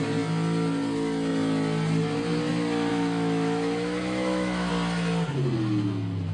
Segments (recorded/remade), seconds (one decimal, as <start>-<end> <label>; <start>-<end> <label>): 0.0-2.9 recorded; 2.9-4.7 remade; 4.7-6.3 recorded